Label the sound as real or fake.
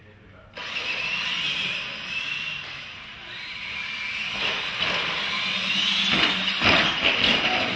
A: real